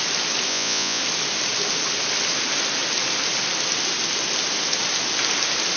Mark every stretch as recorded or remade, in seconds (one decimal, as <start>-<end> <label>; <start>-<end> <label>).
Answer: 0.0-0.5 recorded; 0.5-1.0 remade; 1.0-5.8 recorded